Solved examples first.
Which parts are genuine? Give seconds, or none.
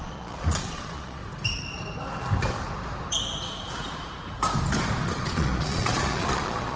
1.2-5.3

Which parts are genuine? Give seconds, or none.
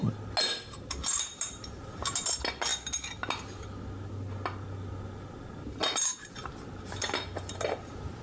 0.0-8.2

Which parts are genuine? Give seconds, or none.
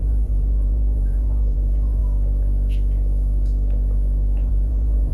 2.0-4.5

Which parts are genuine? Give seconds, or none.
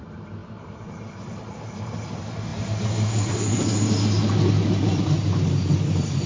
0.0-6.3